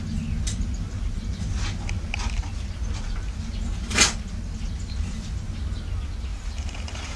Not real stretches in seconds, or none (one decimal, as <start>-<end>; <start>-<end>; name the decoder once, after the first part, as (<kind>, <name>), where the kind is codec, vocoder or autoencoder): 6.3-7.2 (vocoder, BigVGAN v2)